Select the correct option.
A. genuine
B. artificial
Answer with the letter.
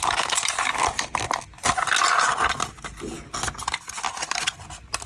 A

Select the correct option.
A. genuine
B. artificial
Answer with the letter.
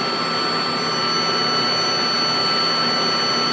A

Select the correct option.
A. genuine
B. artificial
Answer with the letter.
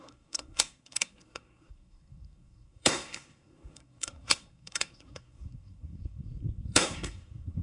B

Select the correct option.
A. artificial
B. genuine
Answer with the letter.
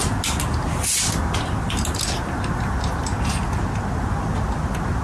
B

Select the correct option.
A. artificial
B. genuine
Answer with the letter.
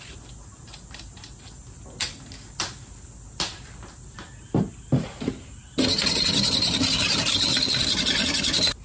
B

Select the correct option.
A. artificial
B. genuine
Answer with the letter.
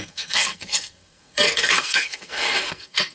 A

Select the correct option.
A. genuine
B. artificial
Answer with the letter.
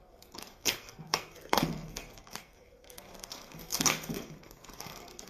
B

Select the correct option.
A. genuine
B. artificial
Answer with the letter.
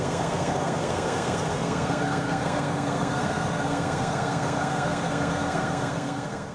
B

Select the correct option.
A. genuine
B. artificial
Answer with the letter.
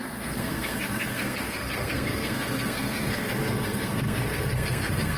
B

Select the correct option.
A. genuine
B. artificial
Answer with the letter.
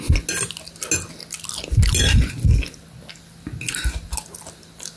A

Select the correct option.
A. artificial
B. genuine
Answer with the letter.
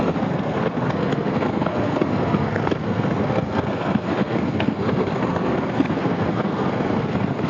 A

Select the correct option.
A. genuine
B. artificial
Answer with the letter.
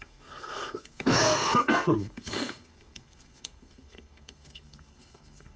B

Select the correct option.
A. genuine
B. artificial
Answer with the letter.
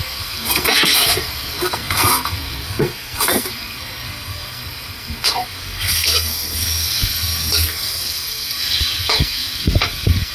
B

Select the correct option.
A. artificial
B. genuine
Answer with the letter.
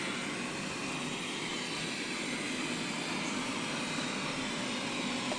B